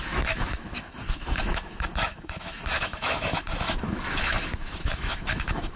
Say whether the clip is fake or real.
fake